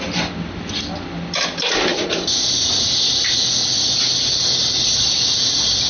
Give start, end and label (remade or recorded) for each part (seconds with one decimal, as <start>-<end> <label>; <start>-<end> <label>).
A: 0.0-5.9 recorded